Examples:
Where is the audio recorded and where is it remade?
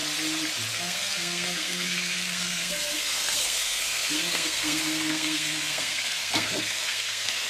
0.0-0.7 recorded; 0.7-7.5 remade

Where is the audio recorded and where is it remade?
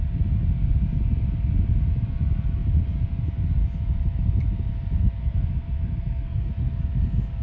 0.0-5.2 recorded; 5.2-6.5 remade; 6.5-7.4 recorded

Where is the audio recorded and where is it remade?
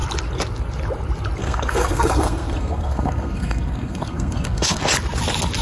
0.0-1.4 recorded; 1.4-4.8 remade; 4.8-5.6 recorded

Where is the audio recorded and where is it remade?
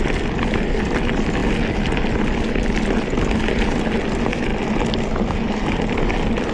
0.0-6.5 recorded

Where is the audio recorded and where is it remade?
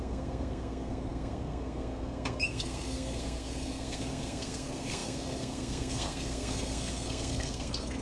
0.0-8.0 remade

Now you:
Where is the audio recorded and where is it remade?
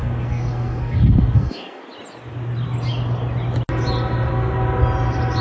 0.0-1.8 remade; 1.8-5.4 recorded